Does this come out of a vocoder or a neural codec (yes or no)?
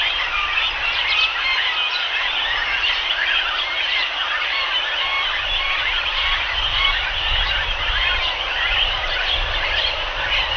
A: yes